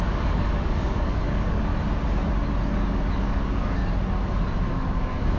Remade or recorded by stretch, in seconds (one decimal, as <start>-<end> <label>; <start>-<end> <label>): 0.0-1.7 remade; 1.7-3.2 recorded; 3.2-3.8 remade; 3.8-4.7 recorded; 4.7-5.4 remade